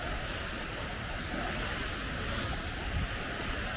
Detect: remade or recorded recorded